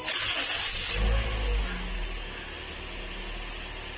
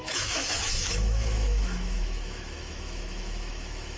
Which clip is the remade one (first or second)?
second